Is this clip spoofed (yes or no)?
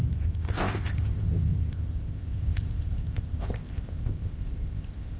yes